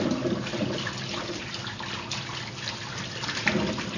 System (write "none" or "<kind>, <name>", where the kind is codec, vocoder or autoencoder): none